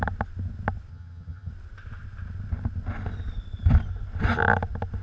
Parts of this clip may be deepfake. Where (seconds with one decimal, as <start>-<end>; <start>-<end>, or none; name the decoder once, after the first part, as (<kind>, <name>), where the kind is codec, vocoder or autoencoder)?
0.9-1.5 (vocoder, HiFi-GAN)